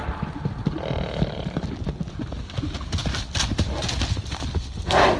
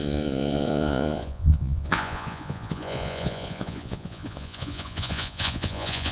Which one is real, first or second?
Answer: first